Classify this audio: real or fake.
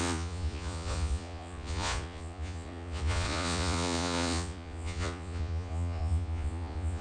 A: fake